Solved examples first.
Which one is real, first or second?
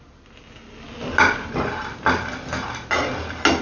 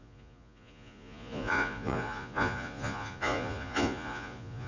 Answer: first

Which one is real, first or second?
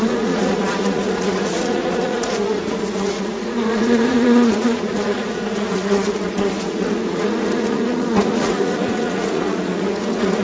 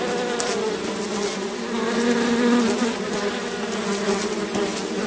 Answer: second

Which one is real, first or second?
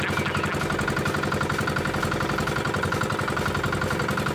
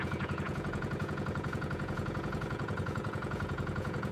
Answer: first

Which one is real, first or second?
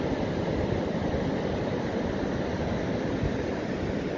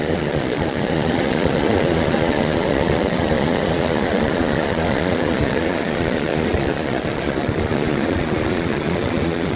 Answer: first